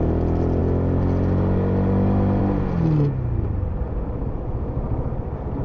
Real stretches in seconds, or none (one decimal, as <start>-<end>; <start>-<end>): 0.0-5.6